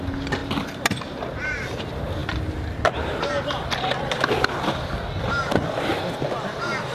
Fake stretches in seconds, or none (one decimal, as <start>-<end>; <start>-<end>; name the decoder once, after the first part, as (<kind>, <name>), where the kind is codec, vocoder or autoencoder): 0.4-1.2 (vocoder, BigVGAN v2)